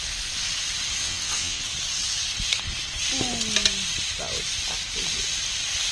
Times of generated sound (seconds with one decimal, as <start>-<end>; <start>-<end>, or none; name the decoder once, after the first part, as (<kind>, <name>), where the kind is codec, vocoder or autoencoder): 1.0-1.6 (vocoder, WaveNeXt)